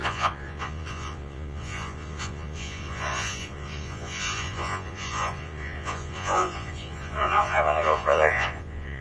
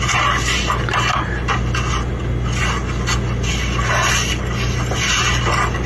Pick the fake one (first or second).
first